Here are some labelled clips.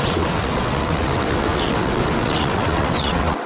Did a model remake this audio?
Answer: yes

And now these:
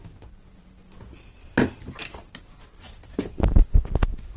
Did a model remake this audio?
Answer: no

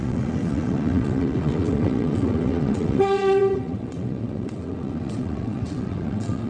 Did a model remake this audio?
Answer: yes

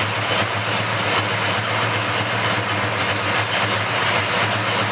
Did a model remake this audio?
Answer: no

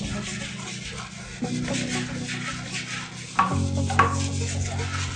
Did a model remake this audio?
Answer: no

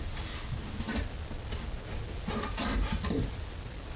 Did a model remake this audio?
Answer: no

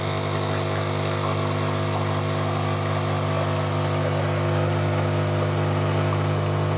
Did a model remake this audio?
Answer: no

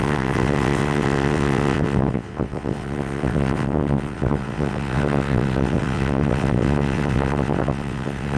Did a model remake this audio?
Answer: yes